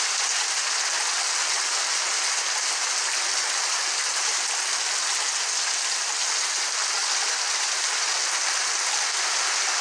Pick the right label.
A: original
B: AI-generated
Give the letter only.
A